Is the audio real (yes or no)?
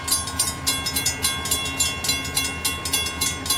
yes